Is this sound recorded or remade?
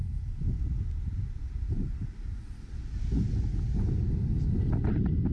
recorded